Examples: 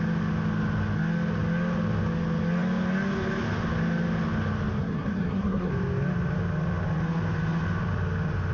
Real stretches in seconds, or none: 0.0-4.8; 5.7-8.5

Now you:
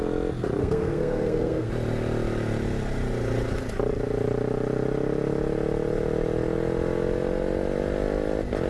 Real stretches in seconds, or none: 0.0-0.6; 1.7-8.7

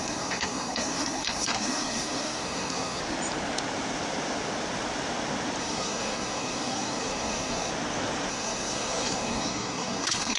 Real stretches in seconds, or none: 3.0-5.6; 7.7-8.3

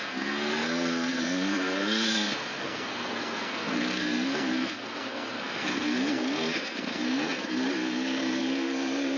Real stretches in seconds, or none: none

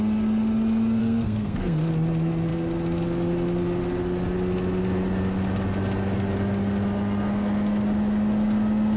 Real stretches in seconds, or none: 0.0-1.0; 1.9-9.0